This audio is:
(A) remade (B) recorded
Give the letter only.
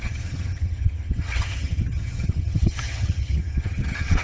A